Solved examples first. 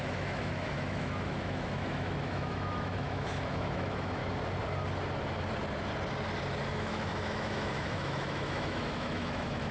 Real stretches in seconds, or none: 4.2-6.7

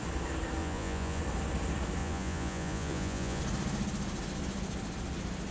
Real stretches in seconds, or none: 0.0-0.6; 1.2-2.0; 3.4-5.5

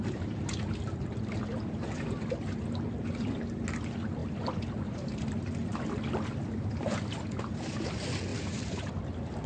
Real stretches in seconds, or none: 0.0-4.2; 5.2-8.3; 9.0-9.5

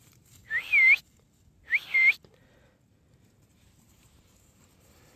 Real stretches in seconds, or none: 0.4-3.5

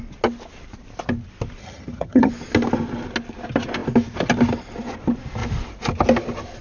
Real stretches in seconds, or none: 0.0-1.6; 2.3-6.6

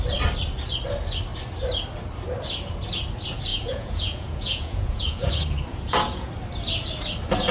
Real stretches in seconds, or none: 0.0-3.5; 5.3-5.7; 6.3-7.5

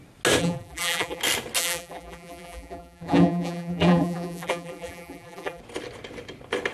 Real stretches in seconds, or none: 0.0-0.4; 1.2-1.6; 5.6-6.7